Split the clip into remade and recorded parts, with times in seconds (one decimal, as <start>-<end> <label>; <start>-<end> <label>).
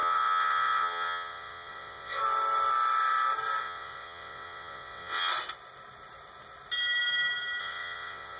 0.0-2.2 remade; 2.2-3.6 recorded; 3.6-5.3 remade; 5.3-7.6 recorded; 7.6-8.4 remade